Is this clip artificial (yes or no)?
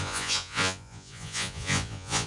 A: yes